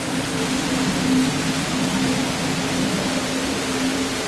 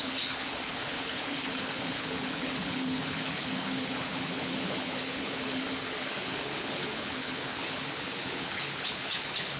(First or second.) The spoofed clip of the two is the second